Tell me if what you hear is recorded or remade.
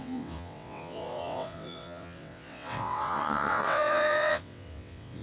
remade